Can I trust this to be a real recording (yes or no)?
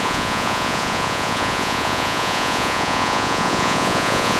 no